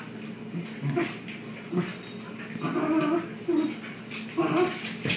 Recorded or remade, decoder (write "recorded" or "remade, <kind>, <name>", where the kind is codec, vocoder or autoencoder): recorded